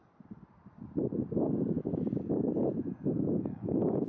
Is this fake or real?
real